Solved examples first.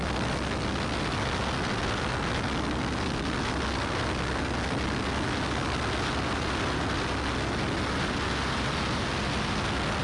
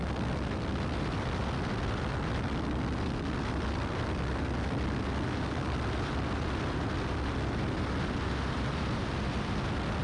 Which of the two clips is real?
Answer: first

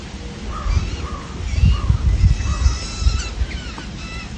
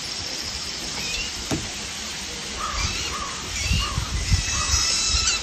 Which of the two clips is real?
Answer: first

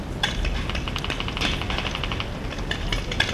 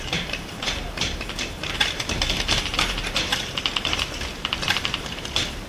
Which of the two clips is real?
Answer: first